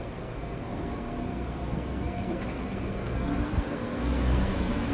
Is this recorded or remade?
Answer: remade